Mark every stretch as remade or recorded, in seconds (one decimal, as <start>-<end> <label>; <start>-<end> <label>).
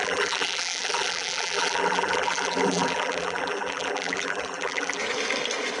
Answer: 0.0-5.0 remade; 5.0-5.8 recorded